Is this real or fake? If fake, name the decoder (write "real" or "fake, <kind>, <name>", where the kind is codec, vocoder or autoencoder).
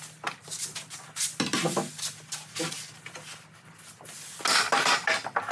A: real